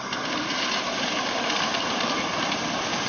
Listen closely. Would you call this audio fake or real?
real